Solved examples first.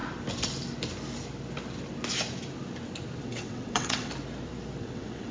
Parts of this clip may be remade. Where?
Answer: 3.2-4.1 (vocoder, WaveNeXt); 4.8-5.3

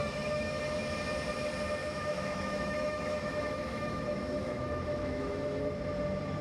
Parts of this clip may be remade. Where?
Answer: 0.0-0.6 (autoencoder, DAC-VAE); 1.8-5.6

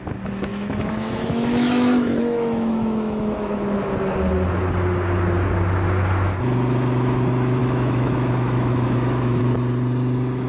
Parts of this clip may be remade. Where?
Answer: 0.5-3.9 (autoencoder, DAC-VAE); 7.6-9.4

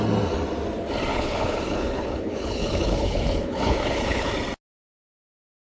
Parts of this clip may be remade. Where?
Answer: 1.1-4.3 (codec, HILCodec)

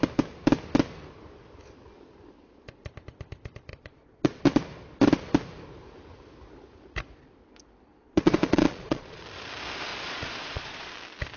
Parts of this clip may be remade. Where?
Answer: 3.7-4.4 (vocoder, Vocos); 7.9-9.2; 9.9-10.9